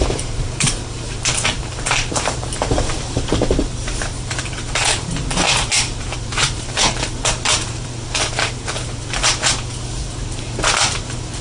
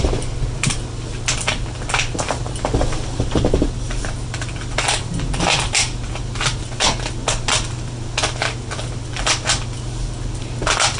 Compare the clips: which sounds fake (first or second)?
first